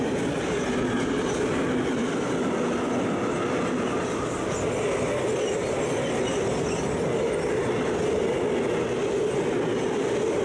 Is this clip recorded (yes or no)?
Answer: yes